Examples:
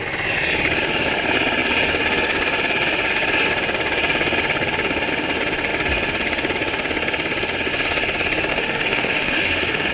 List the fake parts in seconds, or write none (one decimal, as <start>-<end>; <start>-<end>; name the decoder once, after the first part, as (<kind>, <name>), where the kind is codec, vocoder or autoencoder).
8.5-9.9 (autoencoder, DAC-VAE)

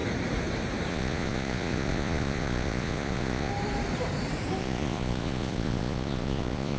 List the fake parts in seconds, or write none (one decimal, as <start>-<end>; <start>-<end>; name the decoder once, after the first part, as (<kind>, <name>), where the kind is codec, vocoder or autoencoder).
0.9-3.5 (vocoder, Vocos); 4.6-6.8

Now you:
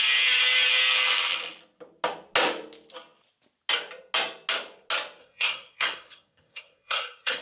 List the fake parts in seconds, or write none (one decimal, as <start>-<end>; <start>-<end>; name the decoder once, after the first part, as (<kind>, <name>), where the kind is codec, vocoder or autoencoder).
5.2-7.4 (codec, SNAC)

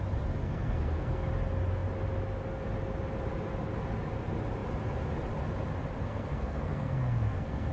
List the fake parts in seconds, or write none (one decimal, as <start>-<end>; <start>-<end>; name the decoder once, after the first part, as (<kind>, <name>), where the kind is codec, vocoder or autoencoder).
0.4-1.3 (codec, SNAC); 6.0-7.7

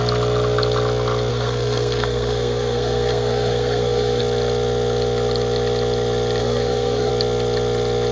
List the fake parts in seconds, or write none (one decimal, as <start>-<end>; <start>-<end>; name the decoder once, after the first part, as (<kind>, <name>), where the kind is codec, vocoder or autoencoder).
1.3-4.2 (codec, SNAC); 6.4-7.1

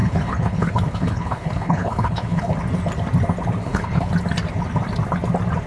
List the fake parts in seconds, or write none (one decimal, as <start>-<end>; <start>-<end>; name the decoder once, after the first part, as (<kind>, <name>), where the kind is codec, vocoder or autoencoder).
0.0-2.5 (codec, HILCodec); 3.6-4.1

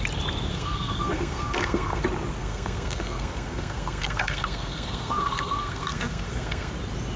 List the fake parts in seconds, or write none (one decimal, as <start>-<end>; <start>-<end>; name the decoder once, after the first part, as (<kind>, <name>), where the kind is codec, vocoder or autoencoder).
0.5-2.0 (codec, SNAC); 2.4-6.7